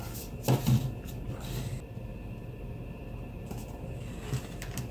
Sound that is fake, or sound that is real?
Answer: real